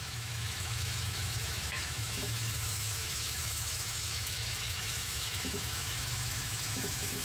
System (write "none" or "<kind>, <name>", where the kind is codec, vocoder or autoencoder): autoencoder, DAC-VAE